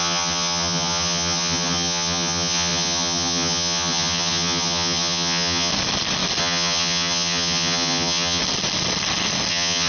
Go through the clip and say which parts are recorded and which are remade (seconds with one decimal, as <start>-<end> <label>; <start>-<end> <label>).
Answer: 0.0-5.7 remade; 5.7-6.4 recorded; 6.4-8.4 remade; 8.4-9.5 recorded; 9.5-9.9 remade